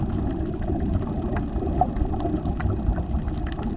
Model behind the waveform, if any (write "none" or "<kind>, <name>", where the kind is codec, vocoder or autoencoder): none